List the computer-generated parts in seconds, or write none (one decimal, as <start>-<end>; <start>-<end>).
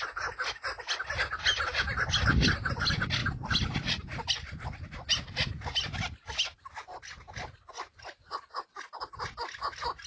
none